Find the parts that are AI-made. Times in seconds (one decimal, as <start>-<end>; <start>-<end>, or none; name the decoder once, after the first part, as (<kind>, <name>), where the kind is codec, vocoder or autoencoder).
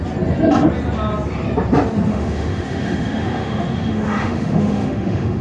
2.1-5.4 (autoencoder, DAC-VAE)